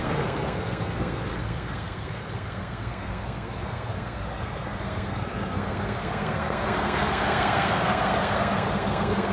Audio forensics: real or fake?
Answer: fake